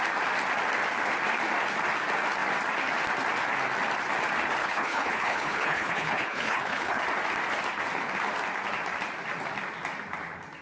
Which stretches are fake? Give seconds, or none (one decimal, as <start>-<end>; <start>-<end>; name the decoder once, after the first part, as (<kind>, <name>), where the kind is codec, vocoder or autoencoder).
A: 4.6-7.0 (codec, HILCodec)